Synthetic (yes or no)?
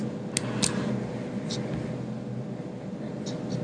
no